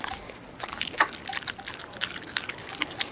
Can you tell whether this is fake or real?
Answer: real